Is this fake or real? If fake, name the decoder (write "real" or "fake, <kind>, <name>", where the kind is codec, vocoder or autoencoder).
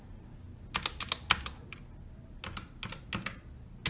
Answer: real